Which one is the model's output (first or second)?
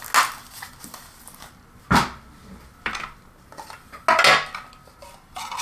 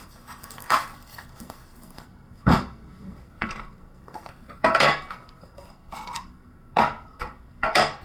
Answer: second